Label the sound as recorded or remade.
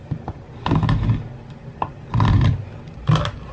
recorded